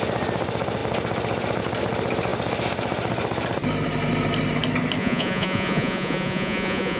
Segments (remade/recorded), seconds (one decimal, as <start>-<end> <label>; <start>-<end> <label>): 0.0-5.0 recorded; 5.0-7.0 remade